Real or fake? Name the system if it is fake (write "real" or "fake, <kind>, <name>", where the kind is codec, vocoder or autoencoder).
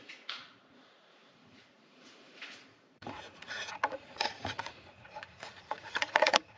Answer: fake, vocoder, Vocos